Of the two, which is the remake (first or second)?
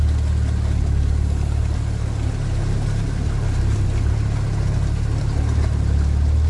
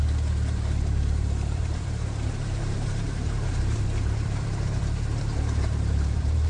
second